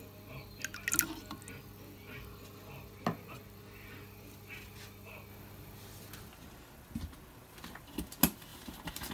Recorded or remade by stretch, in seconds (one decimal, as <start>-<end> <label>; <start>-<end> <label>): 0.0-8.5 recorded; 8.5-9.1 remade